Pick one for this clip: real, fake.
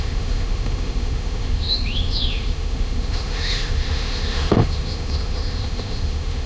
fake